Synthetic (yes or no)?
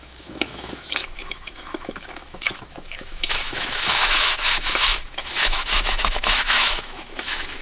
yes